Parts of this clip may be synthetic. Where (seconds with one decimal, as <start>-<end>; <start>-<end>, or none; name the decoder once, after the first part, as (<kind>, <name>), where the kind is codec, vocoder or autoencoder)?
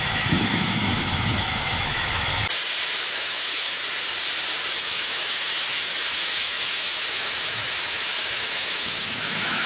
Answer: 0.0-2.3 (autoencoder, DAC-VAE); 3.1-3.8; 4.7-9.7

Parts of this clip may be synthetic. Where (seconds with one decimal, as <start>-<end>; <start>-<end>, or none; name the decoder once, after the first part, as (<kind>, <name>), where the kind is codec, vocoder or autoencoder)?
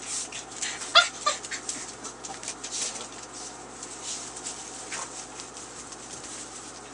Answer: none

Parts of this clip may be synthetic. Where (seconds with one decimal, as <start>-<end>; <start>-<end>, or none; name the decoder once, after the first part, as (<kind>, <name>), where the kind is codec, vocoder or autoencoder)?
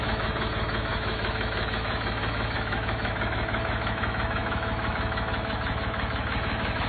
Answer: 0.0-6.9 (autoencoder, DAC-VAE)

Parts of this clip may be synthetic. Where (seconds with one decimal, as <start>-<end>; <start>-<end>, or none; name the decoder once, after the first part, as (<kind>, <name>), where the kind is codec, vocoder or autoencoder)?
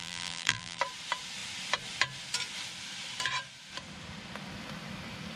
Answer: 0.0-0.8 (vocoder, BigVGAN v2)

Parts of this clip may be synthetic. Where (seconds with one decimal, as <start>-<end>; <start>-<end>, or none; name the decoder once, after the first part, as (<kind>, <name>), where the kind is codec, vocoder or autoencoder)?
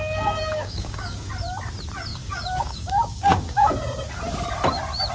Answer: 0.0-1.3 (codec, DAC); 2.1-3.7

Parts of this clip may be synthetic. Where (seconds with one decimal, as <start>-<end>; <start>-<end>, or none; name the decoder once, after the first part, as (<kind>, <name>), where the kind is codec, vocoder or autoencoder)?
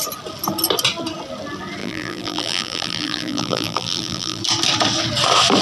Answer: 1.8-4.4 (vocoder, BigVGAN v2)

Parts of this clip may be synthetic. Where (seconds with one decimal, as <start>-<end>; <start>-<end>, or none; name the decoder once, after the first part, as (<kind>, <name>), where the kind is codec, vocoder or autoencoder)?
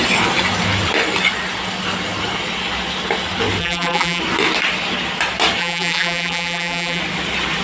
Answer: 3.6-4.2 (vocoder, BigVGAN v2); 5.6-7.0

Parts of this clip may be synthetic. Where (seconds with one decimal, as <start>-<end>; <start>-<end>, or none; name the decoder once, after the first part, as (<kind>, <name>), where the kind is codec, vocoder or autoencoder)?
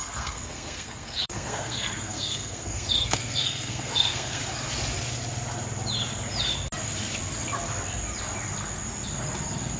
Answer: 0.0-4.4 (codec, SNAC)